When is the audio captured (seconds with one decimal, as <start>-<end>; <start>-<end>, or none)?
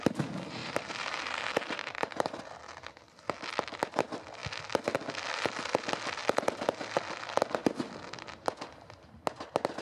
0.0-0.6; 2.4-9.8